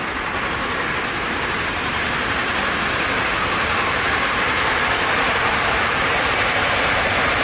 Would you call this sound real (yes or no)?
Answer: no